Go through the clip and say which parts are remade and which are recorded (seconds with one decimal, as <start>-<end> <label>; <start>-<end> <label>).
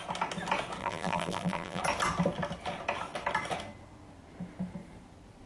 0.0-0.8 recorded; 0.8-1.8 remade; 1.8-5.5 recorded